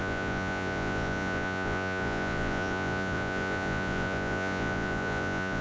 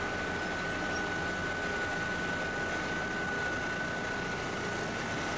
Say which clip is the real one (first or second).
second